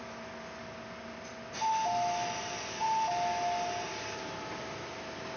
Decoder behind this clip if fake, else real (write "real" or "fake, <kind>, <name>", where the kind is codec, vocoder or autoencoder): real